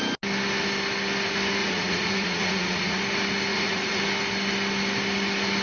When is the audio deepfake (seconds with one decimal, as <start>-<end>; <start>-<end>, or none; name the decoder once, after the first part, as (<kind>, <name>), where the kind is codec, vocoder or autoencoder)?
1.6-3.0 (vocoder, Vocos); 3.5-4.0